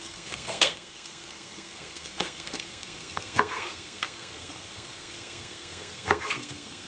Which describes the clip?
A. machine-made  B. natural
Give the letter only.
A